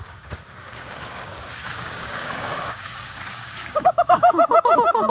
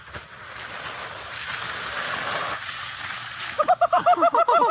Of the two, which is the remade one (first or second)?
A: first